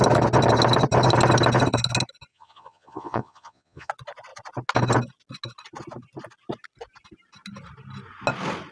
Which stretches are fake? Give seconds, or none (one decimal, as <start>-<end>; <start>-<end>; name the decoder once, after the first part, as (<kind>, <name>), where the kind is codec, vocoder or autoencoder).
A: 2.3-3.9 (vocoder, Vocos)